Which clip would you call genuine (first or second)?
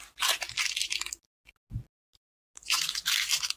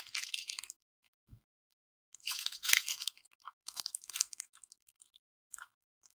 first